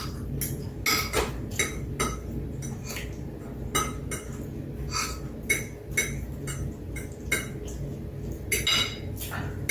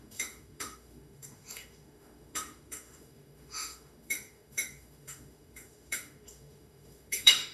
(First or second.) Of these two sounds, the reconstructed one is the second